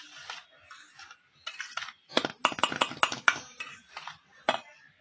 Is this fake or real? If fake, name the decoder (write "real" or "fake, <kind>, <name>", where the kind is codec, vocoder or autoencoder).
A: real